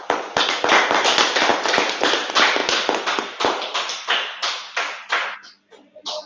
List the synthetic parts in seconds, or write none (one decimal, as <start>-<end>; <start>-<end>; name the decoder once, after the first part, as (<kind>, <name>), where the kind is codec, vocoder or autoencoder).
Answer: none